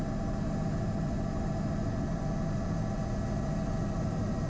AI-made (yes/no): no